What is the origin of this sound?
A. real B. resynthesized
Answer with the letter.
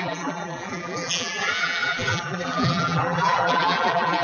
B